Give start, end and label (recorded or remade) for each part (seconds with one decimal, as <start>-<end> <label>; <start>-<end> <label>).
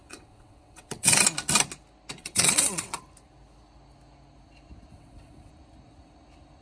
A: 0.0-1.2 remade; 1.2-2.2 recorded; 2.2-3.0 remade; 3.0-4.9 recorded; 4.9-5.5 remade; 5.5-6.6 recorded